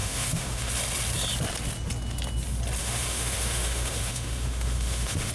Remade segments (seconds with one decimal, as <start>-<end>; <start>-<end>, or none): 0.0-0.7; 2.8-5.3